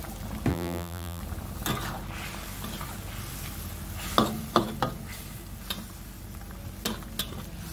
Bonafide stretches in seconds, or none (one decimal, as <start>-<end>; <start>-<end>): 0.0-0.5; 1.2-7.7